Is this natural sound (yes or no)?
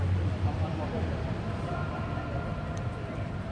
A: yes